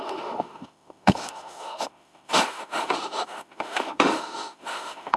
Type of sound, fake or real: fake